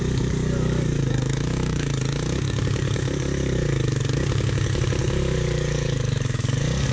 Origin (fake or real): fake